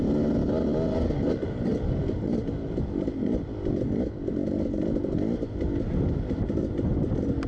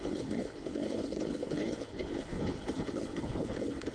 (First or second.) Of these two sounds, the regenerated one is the second